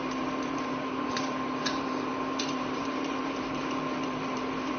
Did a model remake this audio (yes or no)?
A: yes